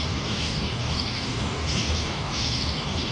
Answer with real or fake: fake